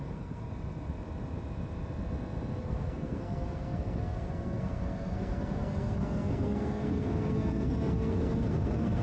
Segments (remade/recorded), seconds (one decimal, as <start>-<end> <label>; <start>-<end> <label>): 0.0-0.5 remade; 0.5-2.6 recorded; 2.6-9.0 remade